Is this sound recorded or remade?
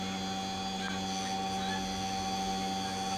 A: recorded